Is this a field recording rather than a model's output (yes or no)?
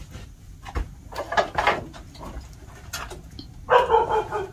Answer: yes